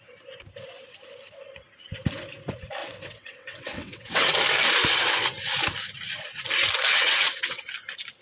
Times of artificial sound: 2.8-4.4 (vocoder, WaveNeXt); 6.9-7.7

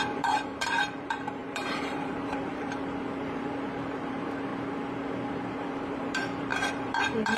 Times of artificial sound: 0.0-4.5 (vocoder, BigVGAN v2); 5.3-7.4

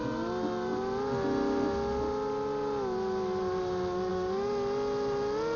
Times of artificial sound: none